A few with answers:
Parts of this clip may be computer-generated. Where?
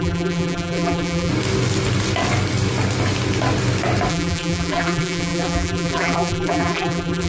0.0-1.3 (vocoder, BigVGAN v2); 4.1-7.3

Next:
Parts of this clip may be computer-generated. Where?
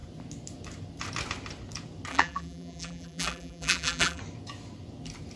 2.1-4.2 (vocoder, BigVGAN v2)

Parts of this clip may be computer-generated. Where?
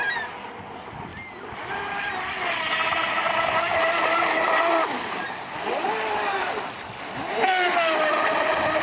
none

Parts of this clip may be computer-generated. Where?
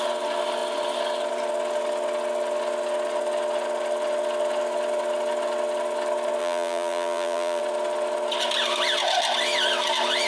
6.4-7.6 (vocoder, BigVGAN v2)